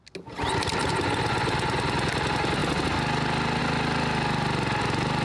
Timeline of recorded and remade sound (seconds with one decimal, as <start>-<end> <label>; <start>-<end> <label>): 0.0-5.2 recorded